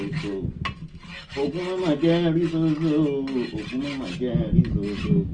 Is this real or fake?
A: real